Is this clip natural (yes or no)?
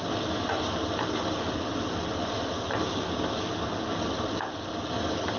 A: yes